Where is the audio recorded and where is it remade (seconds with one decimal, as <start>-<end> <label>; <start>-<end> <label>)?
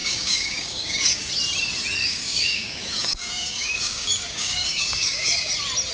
0.0-1.3 remade; 1.3-2.0 recorded; 2.0-5.5 remade; 5.5-5.9 recorded